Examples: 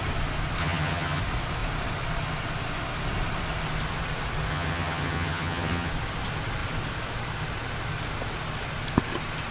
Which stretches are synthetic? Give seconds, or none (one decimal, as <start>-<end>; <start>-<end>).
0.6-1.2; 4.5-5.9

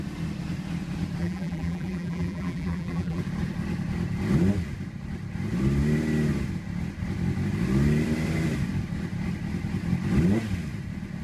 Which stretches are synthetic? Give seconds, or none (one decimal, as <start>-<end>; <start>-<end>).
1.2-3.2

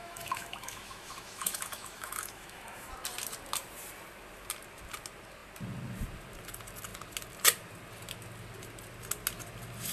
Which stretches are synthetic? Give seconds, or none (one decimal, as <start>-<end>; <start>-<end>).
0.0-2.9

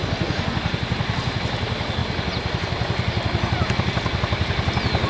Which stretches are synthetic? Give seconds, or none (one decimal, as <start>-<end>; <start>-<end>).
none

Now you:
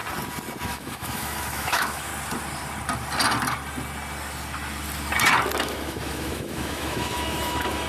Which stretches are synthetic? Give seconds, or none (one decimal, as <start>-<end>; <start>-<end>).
0.7-2.1; 5.6-7.9